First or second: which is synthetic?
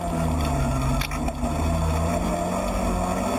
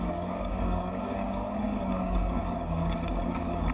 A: second